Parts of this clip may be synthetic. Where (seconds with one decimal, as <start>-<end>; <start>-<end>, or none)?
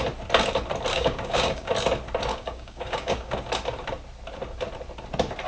0.9-1.7; 2.3-3.3